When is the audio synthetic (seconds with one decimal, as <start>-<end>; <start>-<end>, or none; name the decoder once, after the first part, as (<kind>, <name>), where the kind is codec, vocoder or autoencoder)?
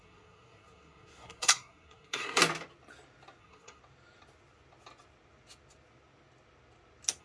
0.0-2.4 (codec, SNAC); 3.4-3.8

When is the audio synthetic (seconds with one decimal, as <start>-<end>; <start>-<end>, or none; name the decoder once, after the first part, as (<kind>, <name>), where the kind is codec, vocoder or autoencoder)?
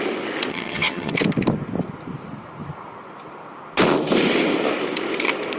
0.5-1.1 (vocoder, HiFi-GAN)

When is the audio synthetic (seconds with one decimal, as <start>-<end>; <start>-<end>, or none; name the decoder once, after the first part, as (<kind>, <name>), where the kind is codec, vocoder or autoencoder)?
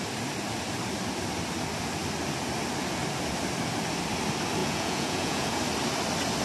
4.6-5.6 (vocoder, Vocos)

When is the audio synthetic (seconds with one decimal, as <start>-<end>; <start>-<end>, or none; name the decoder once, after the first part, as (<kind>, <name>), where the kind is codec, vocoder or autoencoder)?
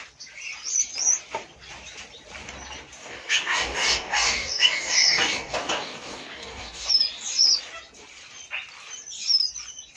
3.0-6.9 (codec, DAC)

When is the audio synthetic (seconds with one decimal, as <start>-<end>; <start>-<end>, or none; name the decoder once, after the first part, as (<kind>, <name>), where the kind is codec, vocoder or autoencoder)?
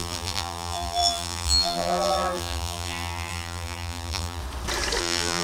0.0-4.4 (vocoder, BigVGAN v2); 5.0-5.4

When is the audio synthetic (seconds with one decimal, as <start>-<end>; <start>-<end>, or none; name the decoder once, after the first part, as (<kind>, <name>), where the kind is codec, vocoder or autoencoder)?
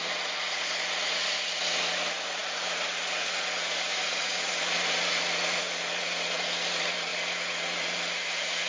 0.0-8.7 (vocoder, Vocos)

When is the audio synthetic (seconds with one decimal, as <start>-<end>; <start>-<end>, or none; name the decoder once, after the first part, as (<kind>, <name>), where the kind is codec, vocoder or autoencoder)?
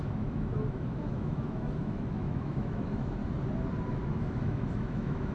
0.0-3.2 (autoencoder, DAC-VAE); 3.9-5.3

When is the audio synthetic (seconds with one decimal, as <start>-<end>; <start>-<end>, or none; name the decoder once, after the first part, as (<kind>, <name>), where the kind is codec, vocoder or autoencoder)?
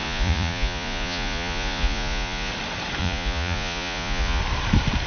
0.0-2.5 (vocoder, Vocos); 3.0-4.4